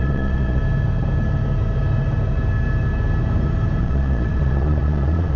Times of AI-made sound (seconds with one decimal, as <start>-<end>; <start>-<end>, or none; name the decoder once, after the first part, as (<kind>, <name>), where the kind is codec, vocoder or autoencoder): 0.0-0.6 (vocoder, Vocos); 3.8-5.4